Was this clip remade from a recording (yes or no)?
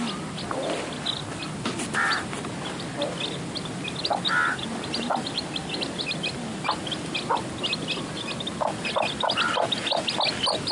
no